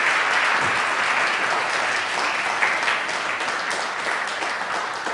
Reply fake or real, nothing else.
real